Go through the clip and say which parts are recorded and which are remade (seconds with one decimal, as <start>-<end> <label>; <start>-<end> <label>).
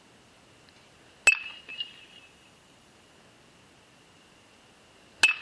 0.0-1.7 recorded; 1.7-3.2 remade; 3.2-5.4 recorded